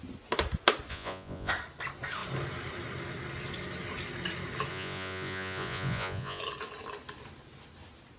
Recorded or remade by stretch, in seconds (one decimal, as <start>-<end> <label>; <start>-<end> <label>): 0.0-0.9 recorded; 0.9-1.5 remade; 1.5-4.7 recorded; 4.7-6.4 remade; 6.4-8.2 recorded